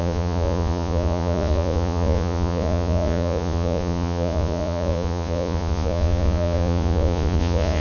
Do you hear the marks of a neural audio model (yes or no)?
yes